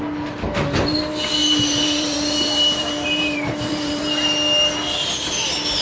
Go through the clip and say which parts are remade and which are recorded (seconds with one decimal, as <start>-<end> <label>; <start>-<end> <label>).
0.0-1.4 recorded; 1.4-4.0 remade; 4.0-5.8 recorded